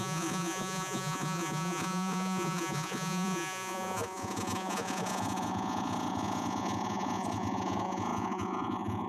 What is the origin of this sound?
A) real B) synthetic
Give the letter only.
B